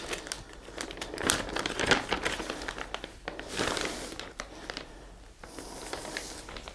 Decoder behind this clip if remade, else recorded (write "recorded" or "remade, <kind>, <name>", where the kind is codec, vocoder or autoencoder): recorded